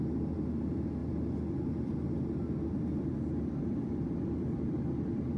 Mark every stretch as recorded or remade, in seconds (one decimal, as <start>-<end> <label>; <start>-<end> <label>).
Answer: 0.0-5.4 recorded